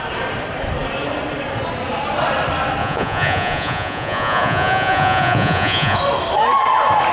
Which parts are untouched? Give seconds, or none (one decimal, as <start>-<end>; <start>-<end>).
0.0-2.8; 6.0-7.1